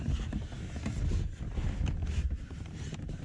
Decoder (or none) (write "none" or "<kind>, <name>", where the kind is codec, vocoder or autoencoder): none